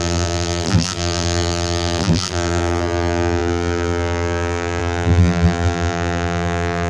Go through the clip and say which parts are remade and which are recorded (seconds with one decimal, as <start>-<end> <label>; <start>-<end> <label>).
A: 0.0-6.9 remade